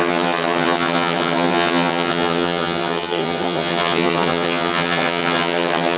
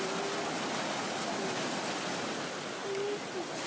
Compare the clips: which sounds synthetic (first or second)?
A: first